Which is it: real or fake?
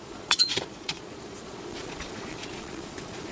fake